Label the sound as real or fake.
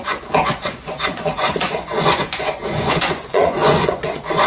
fake